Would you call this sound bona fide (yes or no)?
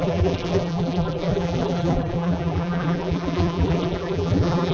no